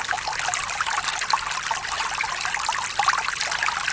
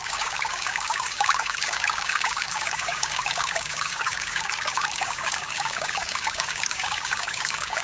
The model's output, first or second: second